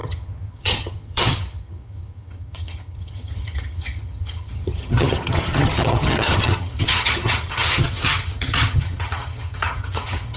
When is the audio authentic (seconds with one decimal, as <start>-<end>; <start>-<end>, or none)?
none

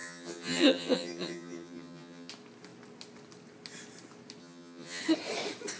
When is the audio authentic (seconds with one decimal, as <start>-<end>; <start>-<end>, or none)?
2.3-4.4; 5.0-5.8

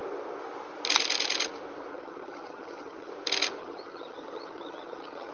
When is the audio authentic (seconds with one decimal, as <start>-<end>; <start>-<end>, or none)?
0.0-1.9; 3.1-3.6

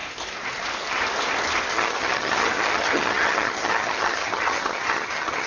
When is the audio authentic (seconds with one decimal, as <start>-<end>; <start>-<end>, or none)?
0.0-1.7

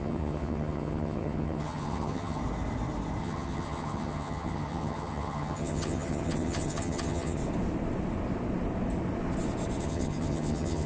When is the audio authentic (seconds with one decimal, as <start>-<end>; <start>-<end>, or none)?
2.4-3.2; 7.4-9.8

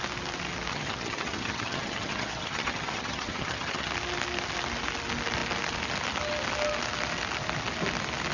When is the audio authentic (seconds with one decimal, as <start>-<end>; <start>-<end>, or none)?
0.0-0.7; 3.9-8.3

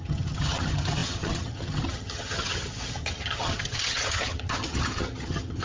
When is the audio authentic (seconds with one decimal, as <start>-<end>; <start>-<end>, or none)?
none